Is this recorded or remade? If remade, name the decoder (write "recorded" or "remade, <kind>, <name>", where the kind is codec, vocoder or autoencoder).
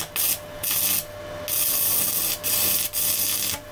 recorded